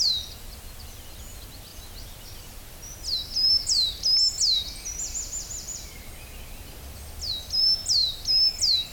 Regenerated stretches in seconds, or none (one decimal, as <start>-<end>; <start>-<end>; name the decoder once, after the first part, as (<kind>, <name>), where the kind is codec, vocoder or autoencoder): none